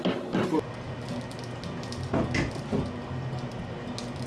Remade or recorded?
recorded